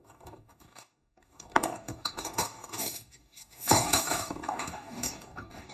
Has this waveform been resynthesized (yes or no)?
yes